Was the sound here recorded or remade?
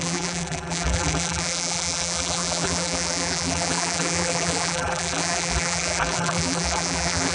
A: remade